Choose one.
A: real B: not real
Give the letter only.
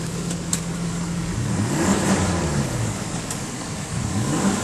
B